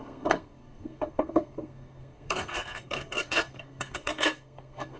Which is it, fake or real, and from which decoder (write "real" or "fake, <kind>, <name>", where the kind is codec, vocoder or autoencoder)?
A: fake, codec, SNAC